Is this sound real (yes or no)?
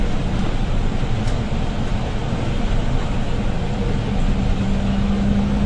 yes